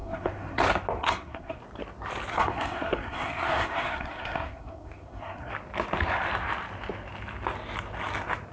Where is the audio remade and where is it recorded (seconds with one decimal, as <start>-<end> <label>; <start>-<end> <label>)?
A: 0.0-0.6 remade; 0.6-1.0 recorded; 1.0-1.6 remade; 1.6-2.3 recorded; 2.3-5.5 remade; 5.5-8.5 recorded